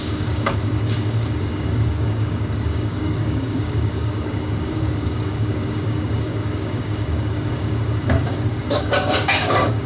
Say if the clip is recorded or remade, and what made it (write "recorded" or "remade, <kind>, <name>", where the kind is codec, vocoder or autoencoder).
remade, codec, DAC